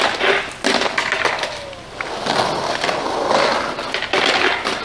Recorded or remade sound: recorded